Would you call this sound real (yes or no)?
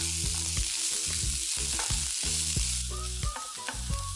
yes